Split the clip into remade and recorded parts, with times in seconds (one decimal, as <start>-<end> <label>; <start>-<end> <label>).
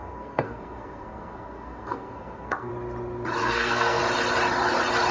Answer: 0.0-2.7 remade; 2.7-3.4 recorded; 3.4-4.0 remade; 4.0-5.1 recorded